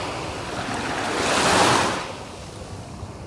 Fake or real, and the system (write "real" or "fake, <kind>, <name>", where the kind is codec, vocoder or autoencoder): real